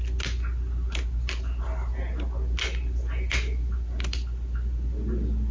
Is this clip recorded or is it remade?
recorded